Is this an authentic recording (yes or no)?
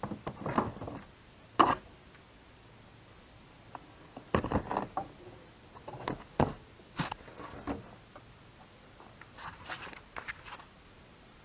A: yes